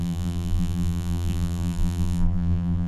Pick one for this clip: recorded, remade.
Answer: remade